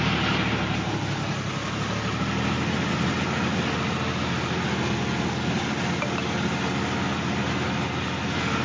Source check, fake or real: real